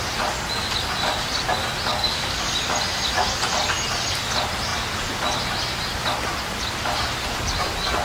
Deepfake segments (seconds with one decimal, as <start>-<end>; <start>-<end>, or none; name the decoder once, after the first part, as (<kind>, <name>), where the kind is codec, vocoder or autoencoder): 1.9-2.4 (codec, DAC)